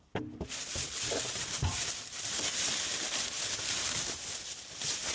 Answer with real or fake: real